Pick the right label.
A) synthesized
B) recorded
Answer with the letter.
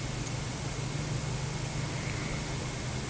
B